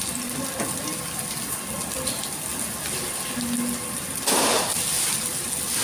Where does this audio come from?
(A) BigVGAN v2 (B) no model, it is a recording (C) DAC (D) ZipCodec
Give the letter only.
B